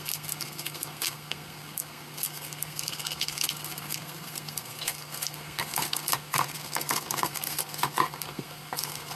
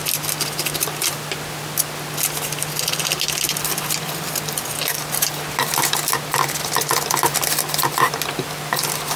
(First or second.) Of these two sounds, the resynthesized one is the first